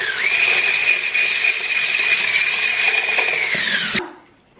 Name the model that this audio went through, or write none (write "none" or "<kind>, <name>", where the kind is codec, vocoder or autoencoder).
none